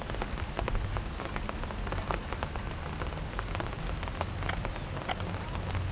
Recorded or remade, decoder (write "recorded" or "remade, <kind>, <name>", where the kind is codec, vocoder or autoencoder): recorded